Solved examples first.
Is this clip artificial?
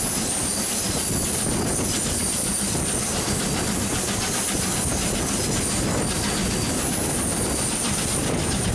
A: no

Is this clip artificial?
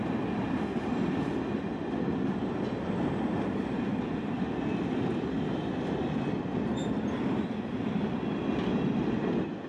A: no